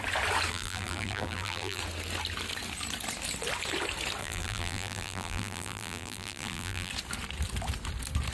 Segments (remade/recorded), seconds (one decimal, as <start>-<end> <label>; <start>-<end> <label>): 0.0-0.5 recorded; 0.5-1.8 remade; 1.8-4.2 recorded; 4.2-6.9 remade; 6.9-8.3 recorded